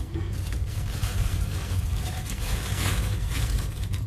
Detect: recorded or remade remade